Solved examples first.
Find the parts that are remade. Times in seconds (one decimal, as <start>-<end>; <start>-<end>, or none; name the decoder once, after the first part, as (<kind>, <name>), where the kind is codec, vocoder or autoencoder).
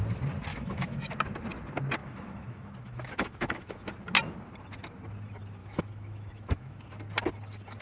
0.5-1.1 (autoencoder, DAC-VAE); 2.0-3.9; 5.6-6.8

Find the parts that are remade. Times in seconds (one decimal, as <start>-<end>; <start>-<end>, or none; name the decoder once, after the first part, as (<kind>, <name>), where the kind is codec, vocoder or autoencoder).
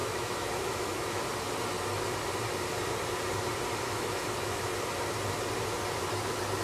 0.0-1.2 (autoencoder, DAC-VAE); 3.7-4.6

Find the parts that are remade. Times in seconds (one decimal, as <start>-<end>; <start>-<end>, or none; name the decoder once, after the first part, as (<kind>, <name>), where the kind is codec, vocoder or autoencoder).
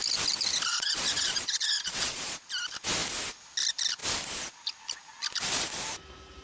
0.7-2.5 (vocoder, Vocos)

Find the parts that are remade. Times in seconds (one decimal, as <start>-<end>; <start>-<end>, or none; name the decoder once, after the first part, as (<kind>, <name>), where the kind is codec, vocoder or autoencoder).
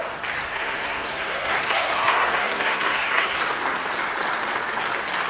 0.4-3.4 (codec, SNAC)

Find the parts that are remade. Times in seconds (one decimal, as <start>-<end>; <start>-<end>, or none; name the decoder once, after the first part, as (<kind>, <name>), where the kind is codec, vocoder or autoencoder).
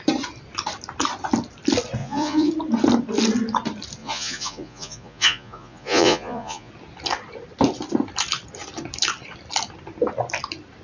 2.0-2.5 (vocoder, Vocos); 4.0-6.7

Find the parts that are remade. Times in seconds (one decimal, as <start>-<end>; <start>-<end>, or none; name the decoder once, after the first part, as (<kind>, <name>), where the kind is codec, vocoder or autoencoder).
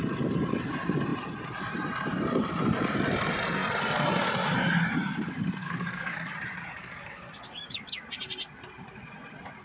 5.6-6.3 (codec, DAC); 6.8-7.8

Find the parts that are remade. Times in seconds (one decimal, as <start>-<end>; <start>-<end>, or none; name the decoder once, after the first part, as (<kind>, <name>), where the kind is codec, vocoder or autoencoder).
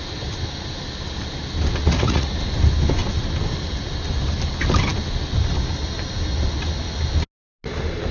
1.8-2.3 (vocoder, Vocos)